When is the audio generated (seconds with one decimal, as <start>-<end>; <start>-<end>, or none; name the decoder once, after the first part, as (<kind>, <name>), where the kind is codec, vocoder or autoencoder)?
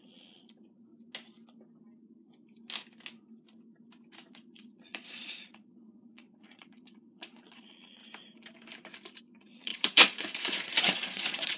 0.0-0.9 (vocoder, Vocos); 4.3-8.0; 9.2-11.6